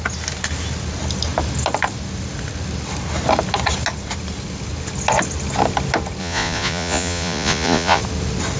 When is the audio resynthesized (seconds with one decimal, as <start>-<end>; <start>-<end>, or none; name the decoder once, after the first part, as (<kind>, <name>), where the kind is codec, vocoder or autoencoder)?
6.2-8.0 (vocoder, Vocos)